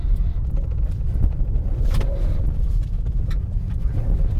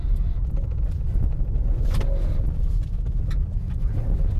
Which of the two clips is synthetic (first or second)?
first